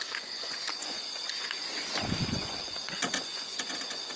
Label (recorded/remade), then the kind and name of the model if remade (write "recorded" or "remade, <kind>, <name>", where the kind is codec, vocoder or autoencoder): remade, vocoder, Vocos